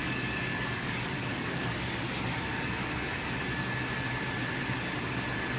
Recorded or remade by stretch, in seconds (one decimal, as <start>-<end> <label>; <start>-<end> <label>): 0.0-3.4 remade; 3.4-5.6 recorded